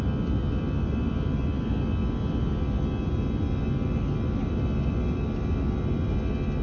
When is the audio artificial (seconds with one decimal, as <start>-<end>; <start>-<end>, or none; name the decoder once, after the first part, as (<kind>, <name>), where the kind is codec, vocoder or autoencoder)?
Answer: none